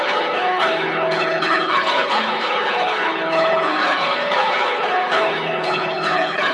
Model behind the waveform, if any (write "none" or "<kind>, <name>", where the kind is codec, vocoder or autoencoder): codec, HILCodec